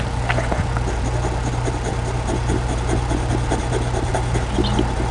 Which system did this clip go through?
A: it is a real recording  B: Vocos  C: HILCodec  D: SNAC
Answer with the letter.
A